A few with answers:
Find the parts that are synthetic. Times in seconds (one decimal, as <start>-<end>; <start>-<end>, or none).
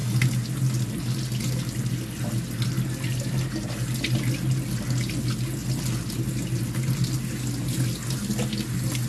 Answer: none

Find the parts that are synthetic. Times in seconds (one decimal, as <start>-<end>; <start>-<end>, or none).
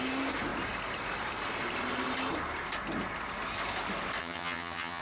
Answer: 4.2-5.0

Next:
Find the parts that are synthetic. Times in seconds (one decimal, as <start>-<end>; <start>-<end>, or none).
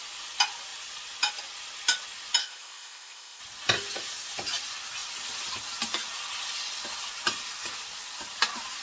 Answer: 2.4-3.4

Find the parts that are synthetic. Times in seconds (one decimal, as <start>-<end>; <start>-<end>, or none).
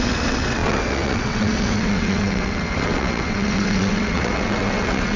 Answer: 0.0-5.2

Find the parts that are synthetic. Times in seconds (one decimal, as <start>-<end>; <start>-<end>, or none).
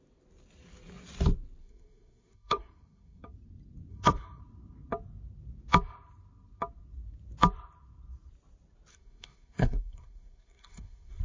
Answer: 1.6-3.2; 3.9-4.4; 8.9-11.2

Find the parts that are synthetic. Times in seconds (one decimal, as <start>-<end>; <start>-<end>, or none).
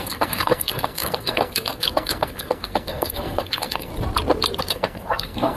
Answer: 0.0-3.9; 4.6-5.6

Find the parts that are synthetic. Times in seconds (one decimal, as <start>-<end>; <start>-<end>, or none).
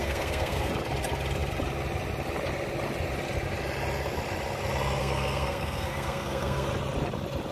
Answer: 0.0-0.7; 5.0-6.7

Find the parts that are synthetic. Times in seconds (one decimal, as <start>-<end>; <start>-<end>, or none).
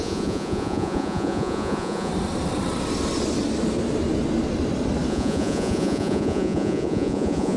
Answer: 0.0-2.1; 5.1-7.6